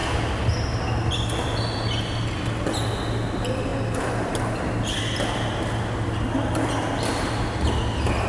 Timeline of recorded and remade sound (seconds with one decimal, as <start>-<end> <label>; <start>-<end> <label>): 0.0-8.3 recorded

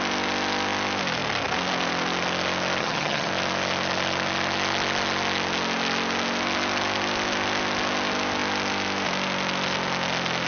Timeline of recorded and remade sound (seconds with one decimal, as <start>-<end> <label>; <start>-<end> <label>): 0.0-2.8 recorded; 2.8-3.3 remade; 3.3-10.5 recorded

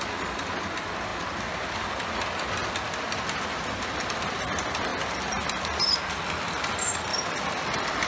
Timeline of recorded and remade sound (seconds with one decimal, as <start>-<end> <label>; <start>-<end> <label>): 0.0-7.1 recorded; 7.1-8.1 remade